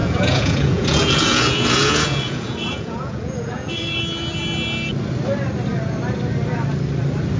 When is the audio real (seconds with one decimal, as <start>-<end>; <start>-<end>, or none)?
4.0-7.4